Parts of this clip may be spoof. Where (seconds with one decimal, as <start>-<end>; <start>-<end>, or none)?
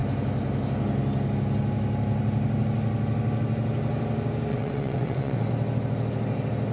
4.5-5.5